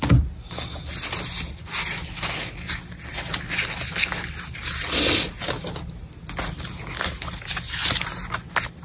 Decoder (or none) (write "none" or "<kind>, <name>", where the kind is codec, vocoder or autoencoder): none